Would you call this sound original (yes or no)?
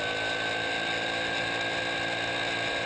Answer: yes